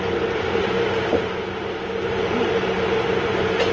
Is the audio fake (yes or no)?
yes